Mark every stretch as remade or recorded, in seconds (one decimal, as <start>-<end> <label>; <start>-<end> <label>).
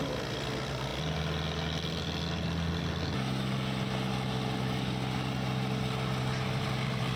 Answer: 0.0-7.2 recorded